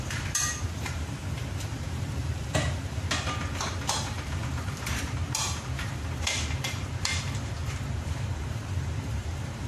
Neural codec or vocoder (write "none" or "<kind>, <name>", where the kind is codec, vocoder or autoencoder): vocoder, BigVGAN v2